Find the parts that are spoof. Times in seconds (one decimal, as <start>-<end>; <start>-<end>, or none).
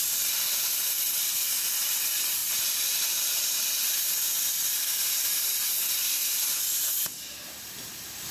none